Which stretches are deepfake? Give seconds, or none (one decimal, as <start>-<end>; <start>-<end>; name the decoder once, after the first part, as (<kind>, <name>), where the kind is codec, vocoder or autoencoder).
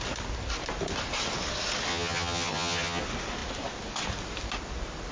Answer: 1.9-3.0 (vocoder, HiFi-GAN)